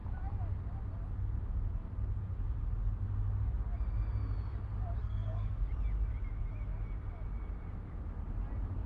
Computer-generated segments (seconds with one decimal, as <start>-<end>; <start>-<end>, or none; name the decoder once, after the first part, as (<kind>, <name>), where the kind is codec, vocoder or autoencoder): 5.0-5.7 (codec, SNAC)